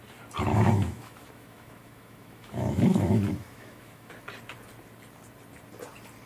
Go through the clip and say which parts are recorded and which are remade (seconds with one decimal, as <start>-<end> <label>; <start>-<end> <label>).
0.0-0.5 recorded; 0.5-4.1 remade; 4.1-6.3 recorded